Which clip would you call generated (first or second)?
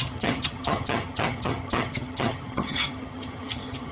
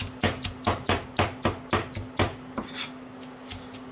first